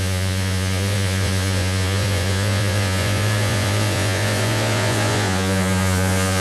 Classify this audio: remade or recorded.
remade